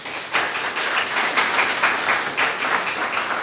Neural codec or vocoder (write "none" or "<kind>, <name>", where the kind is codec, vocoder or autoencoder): none